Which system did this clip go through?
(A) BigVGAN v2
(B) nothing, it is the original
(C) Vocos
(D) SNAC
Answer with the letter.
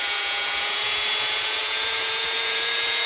C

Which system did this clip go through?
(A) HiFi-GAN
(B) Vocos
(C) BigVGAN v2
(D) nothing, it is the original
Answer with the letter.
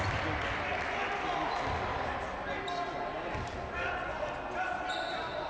D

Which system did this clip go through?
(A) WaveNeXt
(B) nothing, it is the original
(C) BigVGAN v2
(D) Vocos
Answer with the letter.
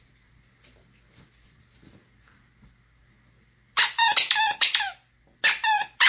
B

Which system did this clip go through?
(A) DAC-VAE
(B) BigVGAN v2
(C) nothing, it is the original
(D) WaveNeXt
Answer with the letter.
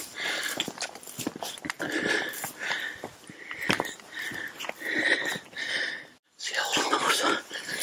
C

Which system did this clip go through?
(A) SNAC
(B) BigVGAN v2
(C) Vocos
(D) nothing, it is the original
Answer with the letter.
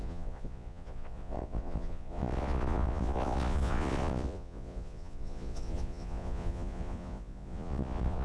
C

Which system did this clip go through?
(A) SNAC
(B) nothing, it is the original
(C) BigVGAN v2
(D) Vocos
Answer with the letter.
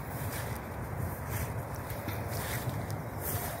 C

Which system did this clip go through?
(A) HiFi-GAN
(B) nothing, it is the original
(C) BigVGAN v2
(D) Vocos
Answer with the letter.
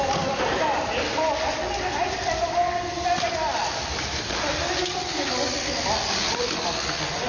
B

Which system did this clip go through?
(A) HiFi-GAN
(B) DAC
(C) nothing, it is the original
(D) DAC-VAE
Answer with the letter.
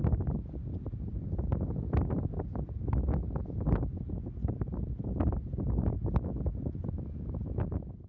C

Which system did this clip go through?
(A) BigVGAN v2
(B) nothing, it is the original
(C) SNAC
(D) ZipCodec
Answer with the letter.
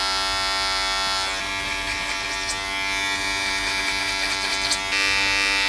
B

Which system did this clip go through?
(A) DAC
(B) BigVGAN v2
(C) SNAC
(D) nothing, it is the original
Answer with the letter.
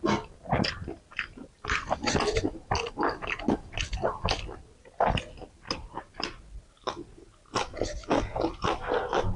D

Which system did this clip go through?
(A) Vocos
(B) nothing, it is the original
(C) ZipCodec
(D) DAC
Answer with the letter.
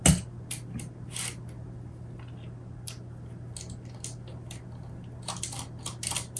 B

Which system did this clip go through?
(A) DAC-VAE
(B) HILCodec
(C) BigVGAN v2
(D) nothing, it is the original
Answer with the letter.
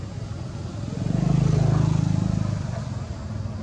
D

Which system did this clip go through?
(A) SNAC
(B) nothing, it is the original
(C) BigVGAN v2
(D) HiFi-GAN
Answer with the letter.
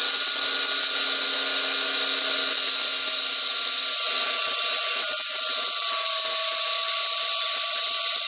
B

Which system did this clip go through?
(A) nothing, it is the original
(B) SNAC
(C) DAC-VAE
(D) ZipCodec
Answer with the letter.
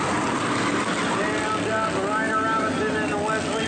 A